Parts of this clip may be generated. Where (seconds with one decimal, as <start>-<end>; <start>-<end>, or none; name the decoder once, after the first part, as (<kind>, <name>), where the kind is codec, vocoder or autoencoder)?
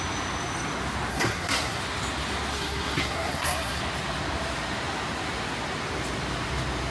1.1-1.8 (codec, SNAC); 2.5-3.8